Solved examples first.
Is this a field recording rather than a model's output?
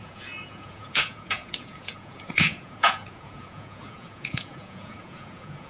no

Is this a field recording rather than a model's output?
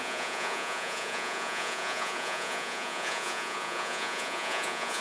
no